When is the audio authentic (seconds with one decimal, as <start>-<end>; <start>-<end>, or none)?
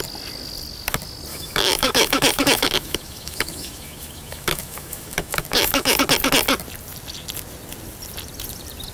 0.0-1.3; 6.0-8.9